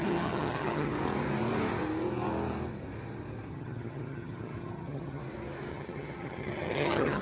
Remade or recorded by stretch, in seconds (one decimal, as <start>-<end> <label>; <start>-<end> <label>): 0.0-0.9 remade; 0.9-3.5 recorded; 3.5-5.2 remade; 5.2-5.7 recorded; 5.7-7.2 remade